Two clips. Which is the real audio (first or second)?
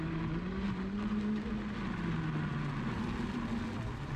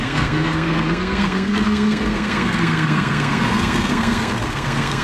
first